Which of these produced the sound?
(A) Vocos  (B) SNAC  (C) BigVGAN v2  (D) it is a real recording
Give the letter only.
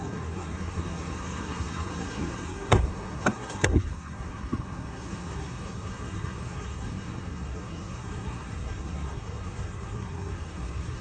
B